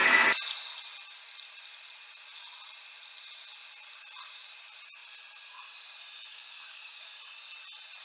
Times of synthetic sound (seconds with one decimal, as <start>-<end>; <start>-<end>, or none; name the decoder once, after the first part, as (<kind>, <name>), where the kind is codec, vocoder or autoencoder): 6.3-7.0 (codec, DAC)